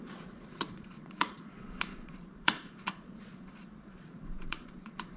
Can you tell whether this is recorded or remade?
remade